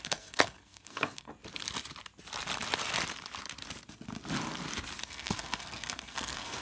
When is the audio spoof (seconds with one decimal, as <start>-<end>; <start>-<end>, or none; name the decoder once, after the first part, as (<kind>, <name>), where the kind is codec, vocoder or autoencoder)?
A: 0.0-1.3 (codec, SNAC); 5.0-6.6